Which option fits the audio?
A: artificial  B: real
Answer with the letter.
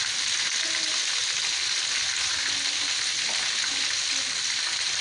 B